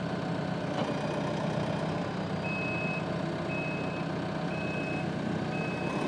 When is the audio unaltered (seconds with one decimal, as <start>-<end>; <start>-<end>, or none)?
0.0-6.1

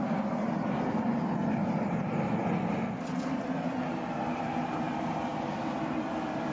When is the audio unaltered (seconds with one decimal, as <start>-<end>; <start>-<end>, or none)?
0.0-6.5

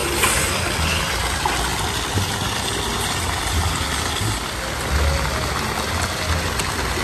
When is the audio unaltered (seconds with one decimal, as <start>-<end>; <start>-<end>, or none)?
0.0-7.0

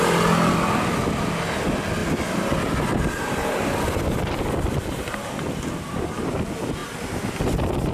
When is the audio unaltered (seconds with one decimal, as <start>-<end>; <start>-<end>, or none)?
0.0-7.9

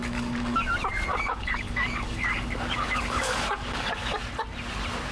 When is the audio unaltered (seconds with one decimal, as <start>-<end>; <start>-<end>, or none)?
0.7-1.1; 4.2-5.1

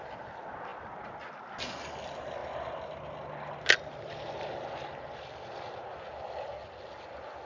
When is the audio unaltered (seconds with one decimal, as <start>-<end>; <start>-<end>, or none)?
0.0-7.5

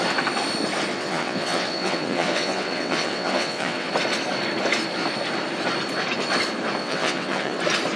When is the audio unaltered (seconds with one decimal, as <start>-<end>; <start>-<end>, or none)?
0.0-0.9; 3.9-6.8; 7.6-8.0

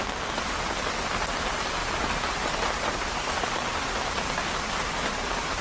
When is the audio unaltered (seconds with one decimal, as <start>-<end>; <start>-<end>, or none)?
0.0-1.8